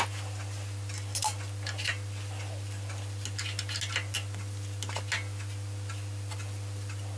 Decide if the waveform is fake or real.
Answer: real